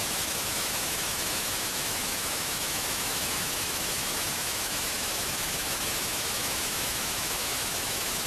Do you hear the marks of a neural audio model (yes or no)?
yes